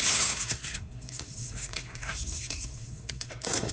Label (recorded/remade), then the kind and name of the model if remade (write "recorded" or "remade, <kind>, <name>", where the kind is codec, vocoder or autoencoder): remade, codec, SNAC